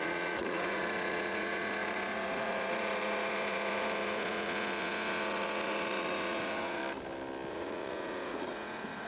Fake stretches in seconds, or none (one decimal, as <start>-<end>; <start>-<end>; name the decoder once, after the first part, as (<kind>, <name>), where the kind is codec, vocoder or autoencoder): 0.0-6.8 (vocoder, Vocos); 7.5-9.1